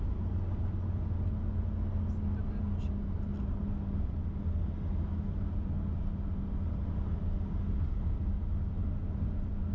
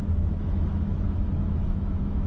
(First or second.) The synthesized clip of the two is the second